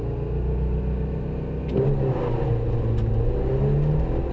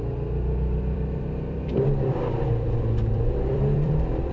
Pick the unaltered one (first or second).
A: first